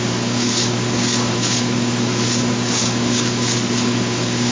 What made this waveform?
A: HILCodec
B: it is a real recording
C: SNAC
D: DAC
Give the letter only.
D